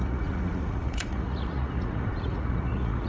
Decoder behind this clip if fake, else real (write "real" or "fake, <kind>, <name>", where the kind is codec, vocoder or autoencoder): fake, vocoder, Vocos